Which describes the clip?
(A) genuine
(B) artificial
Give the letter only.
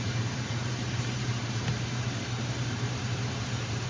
B